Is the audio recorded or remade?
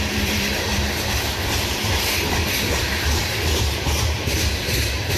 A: remade